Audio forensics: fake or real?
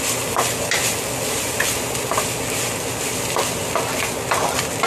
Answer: real